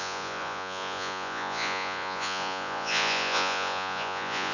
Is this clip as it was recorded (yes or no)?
no